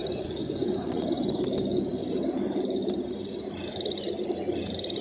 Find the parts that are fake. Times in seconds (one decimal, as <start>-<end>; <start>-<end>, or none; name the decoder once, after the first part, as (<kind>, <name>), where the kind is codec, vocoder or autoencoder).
0.0-1.4 (vocoder, Vocos)